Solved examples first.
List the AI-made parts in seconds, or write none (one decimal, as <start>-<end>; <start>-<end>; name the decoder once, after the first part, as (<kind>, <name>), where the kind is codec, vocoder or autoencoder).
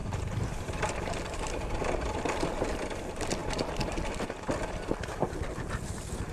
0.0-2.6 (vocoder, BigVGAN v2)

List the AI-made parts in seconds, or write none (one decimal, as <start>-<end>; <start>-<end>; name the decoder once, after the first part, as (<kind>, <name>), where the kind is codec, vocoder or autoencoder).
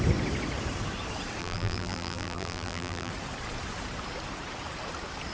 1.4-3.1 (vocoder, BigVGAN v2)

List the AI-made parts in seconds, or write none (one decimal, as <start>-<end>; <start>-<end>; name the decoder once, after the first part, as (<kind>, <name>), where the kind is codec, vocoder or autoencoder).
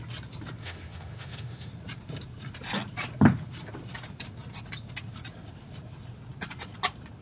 0.6-1.7 (autoencoder, DAC-VAE)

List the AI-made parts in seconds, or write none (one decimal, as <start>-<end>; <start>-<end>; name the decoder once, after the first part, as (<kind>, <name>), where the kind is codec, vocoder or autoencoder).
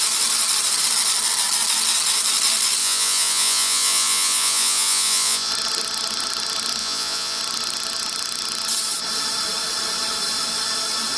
2.8-5.5 (vocoder, Vocos); 6.8-7.4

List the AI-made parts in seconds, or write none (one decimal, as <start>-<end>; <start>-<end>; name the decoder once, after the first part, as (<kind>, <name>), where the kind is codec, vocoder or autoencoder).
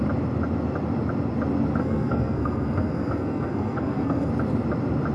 1.8-4.3 (codec, SNAC)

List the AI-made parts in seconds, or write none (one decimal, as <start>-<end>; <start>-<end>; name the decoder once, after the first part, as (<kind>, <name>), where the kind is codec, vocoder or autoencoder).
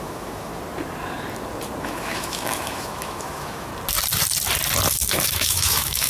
0.0-0.5 (autoencoder, DAC-VAE); 1.8-3.7; 4.9-6.1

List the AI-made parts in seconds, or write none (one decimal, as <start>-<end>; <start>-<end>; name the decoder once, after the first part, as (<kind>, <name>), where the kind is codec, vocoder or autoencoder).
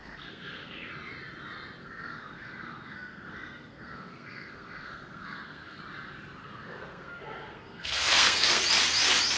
0.0-0.9 (codec, SNAC); 1.8-5.8; 6.4-8.6